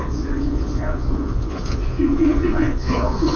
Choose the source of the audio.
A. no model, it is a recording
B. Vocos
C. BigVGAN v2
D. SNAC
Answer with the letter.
B